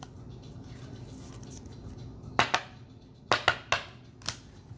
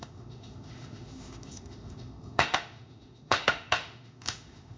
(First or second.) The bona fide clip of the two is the first